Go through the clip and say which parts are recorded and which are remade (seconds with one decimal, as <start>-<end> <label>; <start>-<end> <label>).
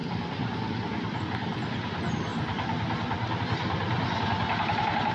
0.0-5.1 recorded